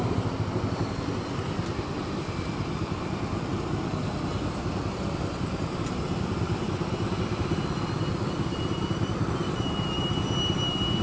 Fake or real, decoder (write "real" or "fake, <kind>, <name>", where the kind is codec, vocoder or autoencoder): real